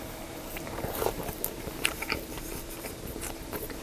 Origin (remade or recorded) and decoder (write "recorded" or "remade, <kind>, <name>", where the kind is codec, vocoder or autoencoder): remade, vocoder, BigVGAN v2